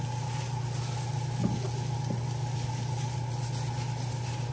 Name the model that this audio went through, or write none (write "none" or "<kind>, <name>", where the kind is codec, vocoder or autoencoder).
none